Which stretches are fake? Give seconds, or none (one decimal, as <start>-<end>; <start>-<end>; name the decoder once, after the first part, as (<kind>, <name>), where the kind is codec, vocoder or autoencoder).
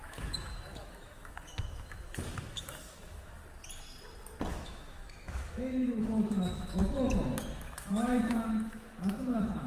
0.0-3.4 (autoencoder, DAC-VAE); 4.5-9.7